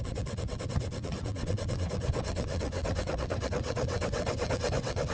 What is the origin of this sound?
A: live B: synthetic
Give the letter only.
B